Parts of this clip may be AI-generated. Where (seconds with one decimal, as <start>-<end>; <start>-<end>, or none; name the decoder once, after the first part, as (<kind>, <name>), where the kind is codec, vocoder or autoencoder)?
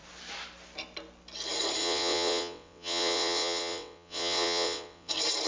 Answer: 1.8-5.1 (vocoder, WaveNeXt)